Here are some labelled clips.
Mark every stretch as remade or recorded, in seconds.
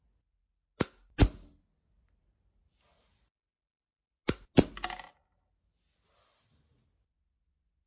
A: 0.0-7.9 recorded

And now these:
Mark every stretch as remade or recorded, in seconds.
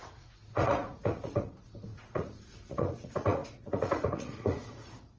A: 0.0-5.2 remade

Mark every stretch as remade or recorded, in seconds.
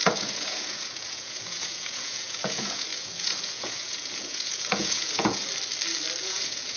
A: 0.0-5.4 remade; 5.4-6.2 recorded; 6.2-6.8 remade